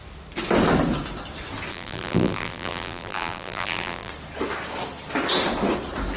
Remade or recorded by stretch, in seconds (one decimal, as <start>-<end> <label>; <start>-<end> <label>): 0.0-1.7 recorded; 1.7-4.1 remade; 4.1-6.2 recorded